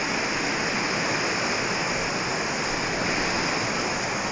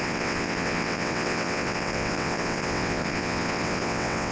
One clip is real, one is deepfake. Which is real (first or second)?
first